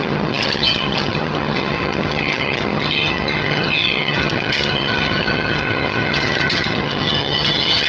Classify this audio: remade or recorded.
remade